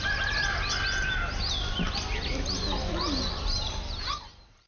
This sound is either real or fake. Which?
real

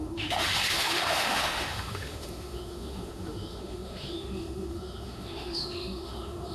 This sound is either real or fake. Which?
fake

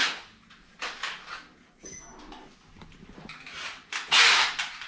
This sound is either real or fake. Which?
real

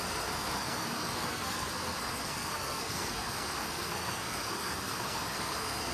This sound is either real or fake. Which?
fake